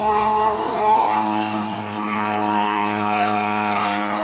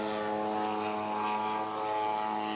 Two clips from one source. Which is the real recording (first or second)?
second